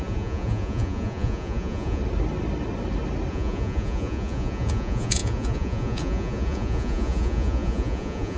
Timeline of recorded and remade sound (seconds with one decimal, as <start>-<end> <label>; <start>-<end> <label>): 0.0-2.0 remade; 2.0-3.3 recorded; 3.3-8.4 remade